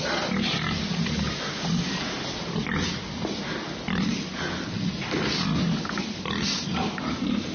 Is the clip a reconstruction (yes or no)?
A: no